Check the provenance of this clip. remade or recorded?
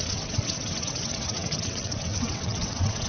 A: remade